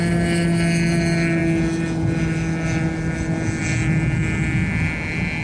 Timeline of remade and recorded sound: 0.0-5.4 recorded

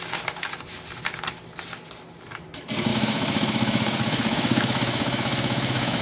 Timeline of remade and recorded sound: 0.0-2.9 recorded; 2.9-6.0 remade